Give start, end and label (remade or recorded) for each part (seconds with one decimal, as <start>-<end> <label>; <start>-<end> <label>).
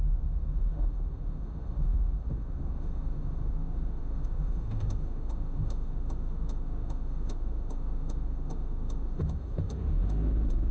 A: 0.0-10.7 remade